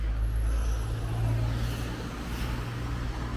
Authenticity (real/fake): real